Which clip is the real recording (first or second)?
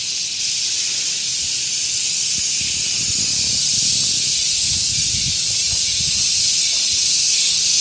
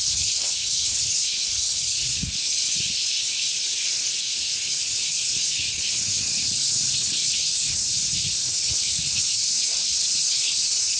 first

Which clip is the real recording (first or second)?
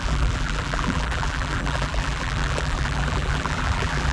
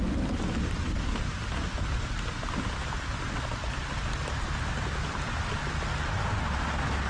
second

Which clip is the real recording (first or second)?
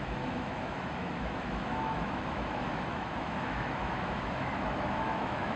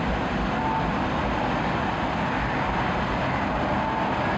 second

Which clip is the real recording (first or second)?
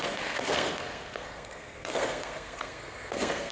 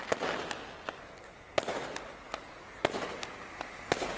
second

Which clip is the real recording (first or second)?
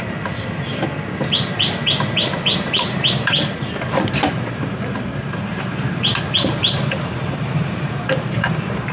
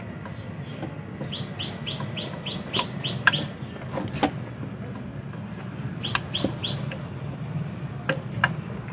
second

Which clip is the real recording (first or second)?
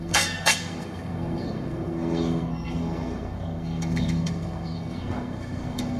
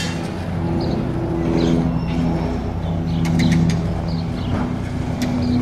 second